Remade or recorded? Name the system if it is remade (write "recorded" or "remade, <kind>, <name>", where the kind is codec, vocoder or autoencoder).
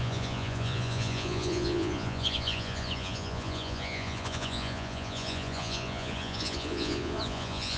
remade, vocoder, Vocos